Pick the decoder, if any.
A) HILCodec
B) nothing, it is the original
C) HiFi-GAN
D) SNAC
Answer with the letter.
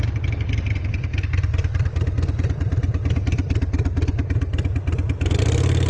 B